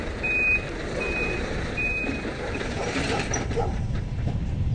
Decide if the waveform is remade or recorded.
remade